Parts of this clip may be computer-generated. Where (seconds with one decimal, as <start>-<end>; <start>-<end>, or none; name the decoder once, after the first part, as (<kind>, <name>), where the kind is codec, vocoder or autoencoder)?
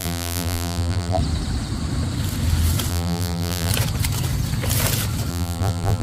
0.0-1.2 (vocoder, BigVGAN v2); 2.9-3.7; 5.3-6.0